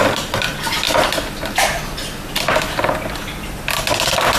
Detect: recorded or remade recorded